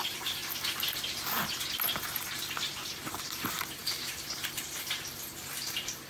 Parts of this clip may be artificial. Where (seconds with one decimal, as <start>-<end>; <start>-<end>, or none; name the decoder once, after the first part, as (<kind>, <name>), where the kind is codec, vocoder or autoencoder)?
0.0-0.4 (vocoder, BigVGAN v2); 3.1-6.1